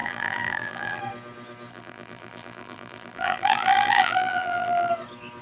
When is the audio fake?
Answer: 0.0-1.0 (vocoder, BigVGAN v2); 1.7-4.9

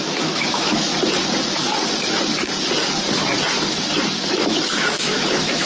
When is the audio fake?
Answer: 0.0-0.9 (autoencoder, DAC-VAE); 4.3-5.7